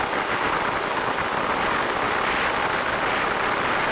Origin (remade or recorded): recorded